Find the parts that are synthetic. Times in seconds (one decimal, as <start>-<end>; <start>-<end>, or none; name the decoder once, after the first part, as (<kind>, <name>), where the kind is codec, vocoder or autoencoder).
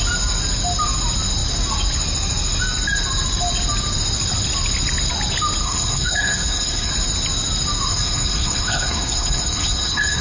5.6-6.9 (codec, HILCodec); 7.9-10.2